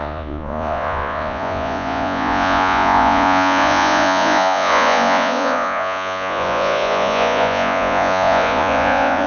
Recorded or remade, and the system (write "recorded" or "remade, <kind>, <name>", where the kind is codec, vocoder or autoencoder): remade, vocoder, Vocos